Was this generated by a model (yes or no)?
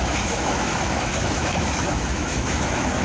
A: yes